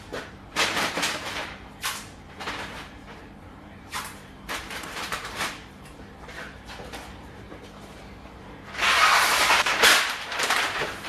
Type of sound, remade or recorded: remade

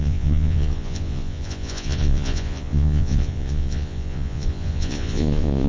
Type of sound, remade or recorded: remade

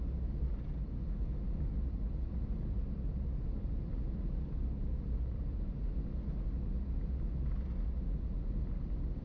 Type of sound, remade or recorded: recorded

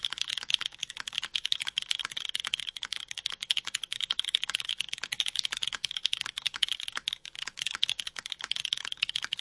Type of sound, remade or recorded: remade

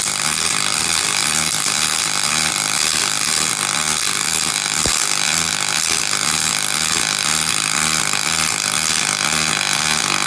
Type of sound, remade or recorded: recorded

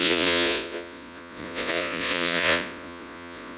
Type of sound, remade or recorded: remade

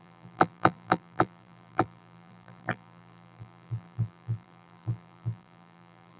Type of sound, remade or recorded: remade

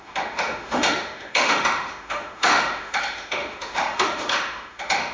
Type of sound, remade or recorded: remade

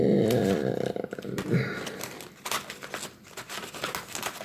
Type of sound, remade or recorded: recorded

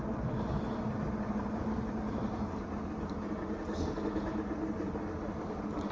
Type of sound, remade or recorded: recorded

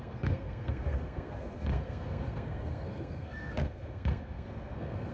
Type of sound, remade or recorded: remade